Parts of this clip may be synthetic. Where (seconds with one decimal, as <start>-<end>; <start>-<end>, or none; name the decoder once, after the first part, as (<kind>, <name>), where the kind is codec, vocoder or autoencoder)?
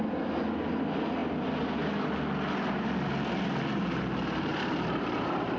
none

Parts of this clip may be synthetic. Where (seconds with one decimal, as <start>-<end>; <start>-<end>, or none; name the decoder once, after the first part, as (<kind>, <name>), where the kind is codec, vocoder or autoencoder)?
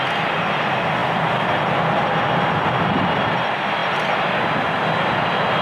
none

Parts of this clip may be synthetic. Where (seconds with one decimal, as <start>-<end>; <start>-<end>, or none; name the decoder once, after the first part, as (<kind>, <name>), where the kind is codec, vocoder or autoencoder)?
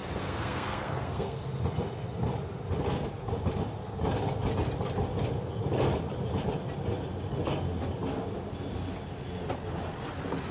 0.0-1.4 (codec, SNAC)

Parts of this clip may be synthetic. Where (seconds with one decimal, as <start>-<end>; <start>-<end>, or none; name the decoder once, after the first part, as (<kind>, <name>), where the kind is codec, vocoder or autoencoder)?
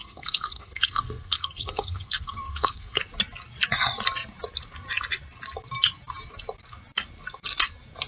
0.0-3.0 (codec, SNAC)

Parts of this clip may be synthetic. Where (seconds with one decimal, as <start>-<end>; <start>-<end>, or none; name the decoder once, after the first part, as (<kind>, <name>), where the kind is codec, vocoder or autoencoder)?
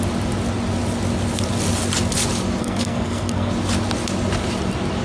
2.6-3.5 (codec, SNAC)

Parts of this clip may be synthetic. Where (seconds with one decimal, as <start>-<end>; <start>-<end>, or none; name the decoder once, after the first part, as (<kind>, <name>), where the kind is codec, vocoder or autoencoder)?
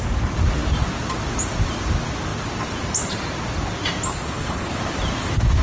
4.1-4.8 (codec, HILCodec)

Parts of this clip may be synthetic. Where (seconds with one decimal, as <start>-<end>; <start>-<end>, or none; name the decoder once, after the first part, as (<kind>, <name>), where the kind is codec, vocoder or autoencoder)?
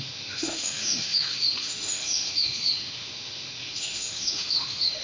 0.0-5.0 (autoencoder, DAC-VAE)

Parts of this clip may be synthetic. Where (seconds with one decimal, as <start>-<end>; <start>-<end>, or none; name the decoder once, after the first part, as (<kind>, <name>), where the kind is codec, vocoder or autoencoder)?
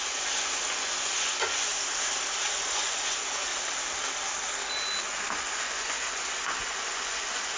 0.0-1.7 (vocoder, Vocos); 2.5-3.5; 5.0-7.6